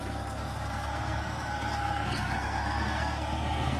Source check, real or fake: fake